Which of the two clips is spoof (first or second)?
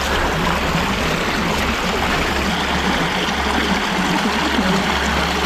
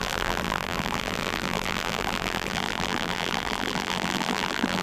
second